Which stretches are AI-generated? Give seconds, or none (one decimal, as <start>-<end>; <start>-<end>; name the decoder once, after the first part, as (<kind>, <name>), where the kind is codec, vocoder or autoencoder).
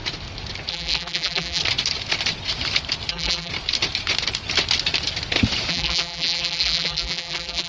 0.7-1.6 (vocoder, BigVGAN v2); 3.1-3.5; 5.7-7.7